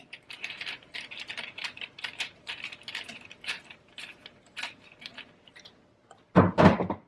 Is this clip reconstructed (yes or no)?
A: yes